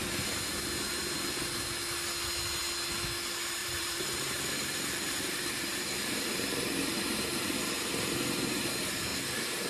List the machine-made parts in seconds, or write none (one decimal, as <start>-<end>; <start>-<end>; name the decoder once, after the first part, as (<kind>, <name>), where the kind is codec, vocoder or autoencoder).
3.6-8.7 (vocoder, BigVGAN v2)